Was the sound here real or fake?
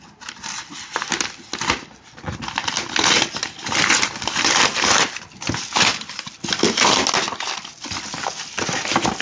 real